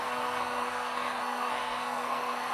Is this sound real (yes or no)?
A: no